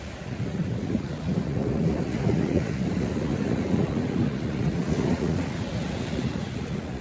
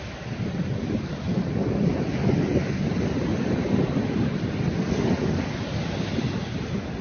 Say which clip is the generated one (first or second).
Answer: first